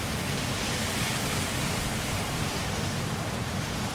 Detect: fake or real real